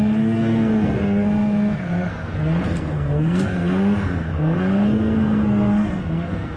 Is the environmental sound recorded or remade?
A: remade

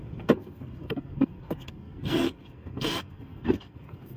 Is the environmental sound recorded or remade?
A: remade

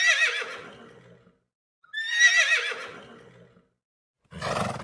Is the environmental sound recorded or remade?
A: recorded